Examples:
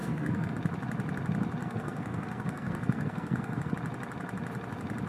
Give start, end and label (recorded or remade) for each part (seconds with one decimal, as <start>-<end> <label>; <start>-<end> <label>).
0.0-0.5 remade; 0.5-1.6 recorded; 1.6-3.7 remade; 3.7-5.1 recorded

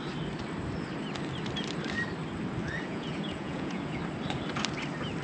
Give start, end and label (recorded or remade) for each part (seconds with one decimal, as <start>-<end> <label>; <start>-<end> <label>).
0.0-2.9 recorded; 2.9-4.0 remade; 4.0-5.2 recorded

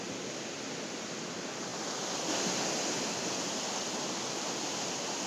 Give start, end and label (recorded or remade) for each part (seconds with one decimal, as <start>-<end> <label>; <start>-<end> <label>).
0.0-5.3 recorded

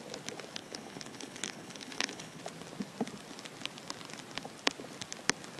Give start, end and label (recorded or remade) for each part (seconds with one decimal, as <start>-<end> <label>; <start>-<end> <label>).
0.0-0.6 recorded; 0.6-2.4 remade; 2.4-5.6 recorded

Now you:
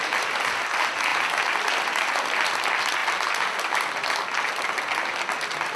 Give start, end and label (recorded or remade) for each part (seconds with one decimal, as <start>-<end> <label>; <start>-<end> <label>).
0.0-5.8 recorded